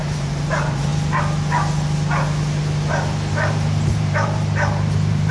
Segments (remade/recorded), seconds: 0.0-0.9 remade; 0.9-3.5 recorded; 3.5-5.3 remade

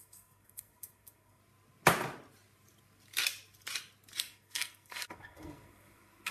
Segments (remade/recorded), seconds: 0.0-1.4 remade; 1.4-4.2 recorded; 4.2-6.3 remade